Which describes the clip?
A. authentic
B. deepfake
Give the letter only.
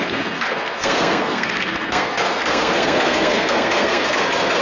B